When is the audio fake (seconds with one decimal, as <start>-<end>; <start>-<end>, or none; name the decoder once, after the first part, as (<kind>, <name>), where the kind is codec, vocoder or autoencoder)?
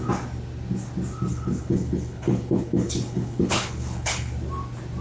1.3-4.3 (codec, HILCodec)